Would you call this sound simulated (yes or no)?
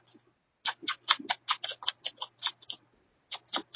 no